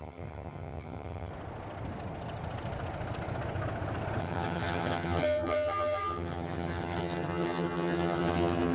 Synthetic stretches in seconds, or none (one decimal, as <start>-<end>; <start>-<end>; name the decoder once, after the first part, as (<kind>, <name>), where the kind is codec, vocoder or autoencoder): 0.0-1.3 (vocoder, HiFi-GAN); 4.2-8.7